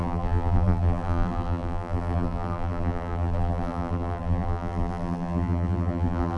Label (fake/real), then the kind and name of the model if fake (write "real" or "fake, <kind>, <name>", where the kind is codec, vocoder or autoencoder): fake, vocoder, BigVGAN v2